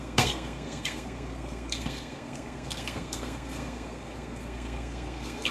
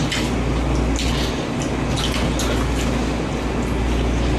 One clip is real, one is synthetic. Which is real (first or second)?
second